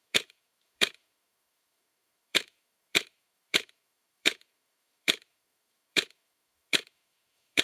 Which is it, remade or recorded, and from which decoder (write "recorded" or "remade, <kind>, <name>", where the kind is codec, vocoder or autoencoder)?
remade, autoencoder, DAC-VAE